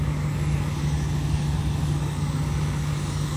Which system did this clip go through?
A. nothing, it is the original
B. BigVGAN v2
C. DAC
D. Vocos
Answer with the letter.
C